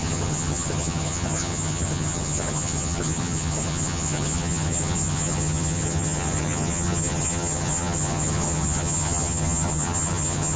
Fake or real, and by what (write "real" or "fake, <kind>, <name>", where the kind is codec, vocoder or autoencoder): fake, vocoder, HiFi-GAN